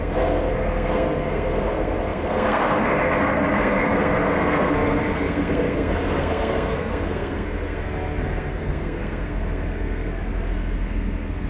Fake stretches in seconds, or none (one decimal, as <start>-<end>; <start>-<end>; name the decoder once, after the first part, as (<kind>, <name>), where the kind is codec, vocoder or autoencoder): 0.0-11.5 (codec, SNAC)